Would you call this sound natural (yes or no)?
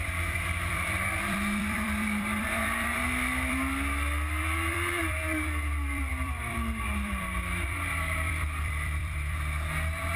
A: no